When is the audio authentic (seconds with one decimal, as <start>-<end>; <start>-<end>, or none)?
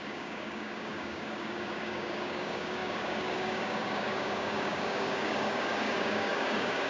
none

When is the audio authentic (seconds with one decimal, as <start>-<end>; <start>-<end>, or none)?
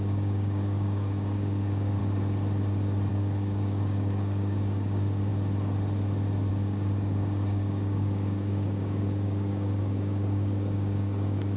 2.0-3.1; 5.3-6.5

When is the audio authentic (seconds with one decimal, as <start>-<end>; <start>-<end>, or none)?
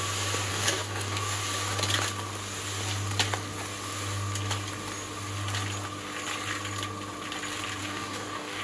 0.0-0.5; 1.4-7.8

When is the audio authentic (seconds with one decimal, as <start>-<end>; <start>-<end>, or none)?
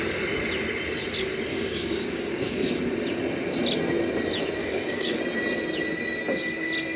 0.0-1.5; 2.8-4.6; 5.2-7.0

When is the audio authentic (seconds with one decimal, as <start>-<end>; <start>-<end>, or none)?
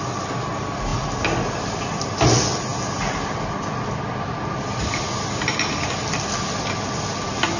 0.0-7.6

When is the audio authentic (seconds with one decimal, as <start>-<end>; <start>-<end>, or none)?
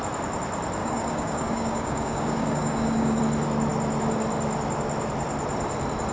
0.0-0.8; 3.2-6.1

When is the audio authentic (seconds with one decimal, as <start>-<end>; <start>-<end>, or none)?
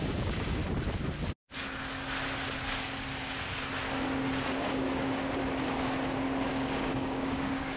0.6-4.6; 5.4-6.5